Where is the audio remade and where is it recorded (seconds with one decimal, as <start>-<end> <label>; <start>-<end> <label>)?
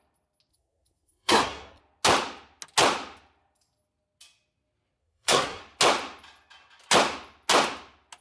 0.0-0.5 recorded; 0.5-1.8 remade; 1.8-5.0 recorded; 5.0-5.6 remade; 5.6-8.2 recorded